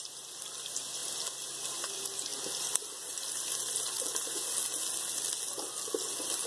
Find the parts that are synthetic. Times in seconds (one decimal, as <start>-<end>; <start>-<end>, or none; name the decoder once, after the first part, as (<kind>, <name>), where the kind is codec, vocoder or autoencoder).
none